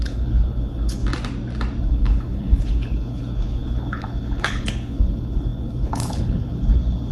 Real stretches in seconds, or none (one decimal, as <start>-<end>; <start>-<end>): 1.0-1.8

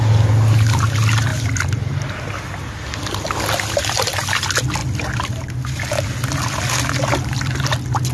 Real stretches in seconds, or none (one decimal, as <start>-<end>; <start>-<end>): 0.0-8.1

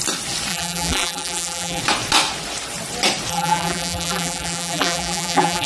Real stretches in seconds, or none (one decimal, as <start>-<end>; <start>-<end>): 0.0-0.5; 1.8-3.3